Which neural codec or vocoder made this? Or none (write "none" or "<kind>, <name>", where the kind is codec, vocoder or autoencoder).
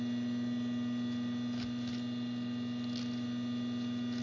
none